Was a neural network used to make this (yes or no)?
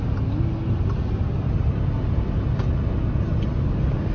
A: no